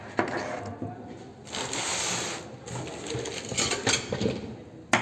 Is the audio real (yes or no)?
yes